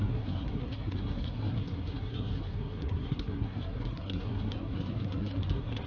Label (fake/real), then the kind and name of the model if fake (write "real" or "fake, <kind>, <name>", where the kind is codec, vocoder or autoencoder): fake, codec, SNAC